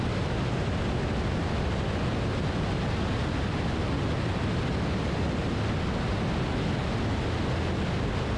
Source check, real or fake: real